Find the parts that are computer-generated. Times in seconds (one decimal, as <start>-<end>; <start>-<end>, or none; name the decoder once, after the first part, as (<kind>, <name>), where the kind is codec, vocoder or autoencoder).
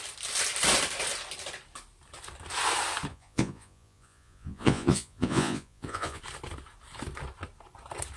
3.1-6.2 (vocoder, Vocos)